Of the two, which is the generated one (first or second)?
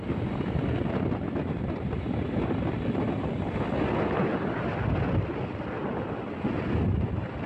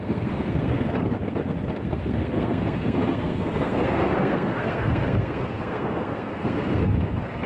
second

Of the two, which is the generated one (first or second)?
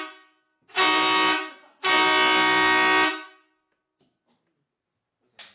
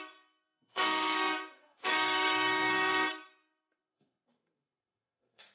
second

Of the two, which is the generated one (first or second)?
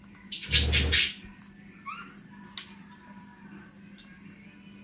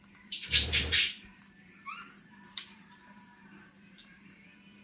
second